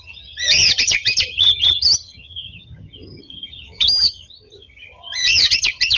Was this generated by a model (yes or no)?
yes